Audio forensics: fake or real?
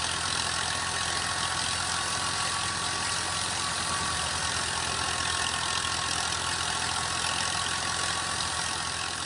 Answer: real